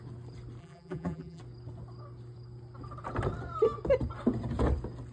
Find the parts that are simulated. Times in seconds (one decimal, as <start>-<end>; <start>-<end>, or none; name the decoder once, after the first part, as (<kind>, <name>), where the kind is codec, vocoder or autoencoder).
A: 0.6-1.4 (vocoder, BigVGAN v2)